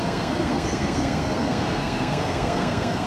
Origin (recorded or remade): remade